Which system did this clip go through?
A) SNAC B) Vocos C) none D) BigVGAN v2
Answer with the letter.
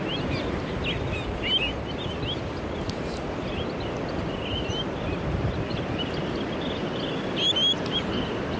C